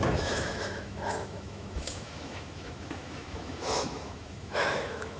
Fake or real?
fake